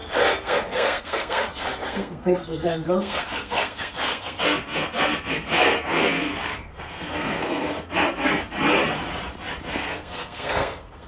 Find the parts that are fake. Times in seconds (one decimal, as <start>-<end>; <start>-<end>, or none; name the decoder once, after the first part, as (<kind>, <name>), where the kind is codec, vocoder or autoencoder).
0.0-8.3 (codec, SNAC); 9.7-11.1